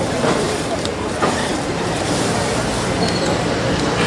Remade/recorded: remade